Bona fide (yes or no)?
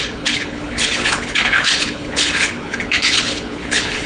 no